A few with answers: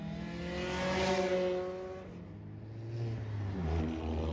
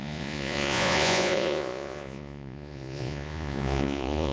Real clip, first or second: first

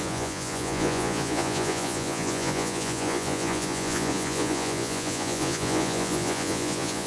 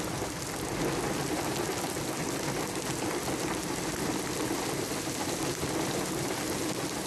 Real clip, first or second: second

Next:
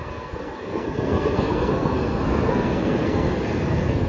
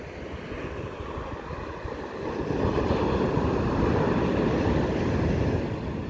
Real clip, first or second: second